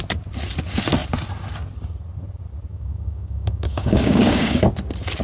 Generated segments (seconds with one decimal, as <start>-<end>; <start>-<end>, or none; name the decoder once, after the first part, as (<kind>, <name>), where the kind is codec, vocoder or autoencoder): 2.7-4.6 (codec, DAC)